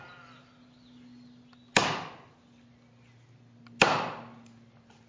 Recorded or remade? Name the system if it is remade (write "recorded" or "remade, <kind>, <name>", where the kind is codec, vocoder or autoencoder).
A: recorded